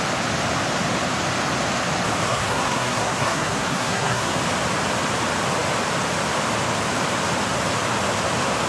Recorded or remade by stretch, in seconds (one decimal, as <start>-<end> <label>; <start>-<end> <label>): 0.0-2.3 recorded; 2.3-4.4 remade; 4.4-8.7 recorded